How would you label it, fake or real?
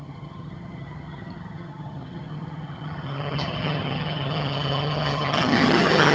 fake